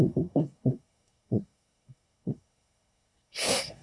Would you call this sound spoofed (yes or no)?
yes